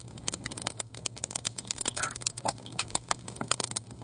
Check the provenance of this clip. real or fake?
fake